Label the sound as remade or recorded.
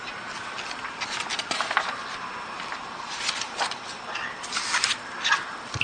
recorded